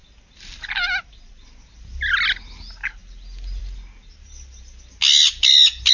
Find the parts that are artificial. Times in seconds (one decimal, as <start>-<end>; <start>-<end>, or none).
none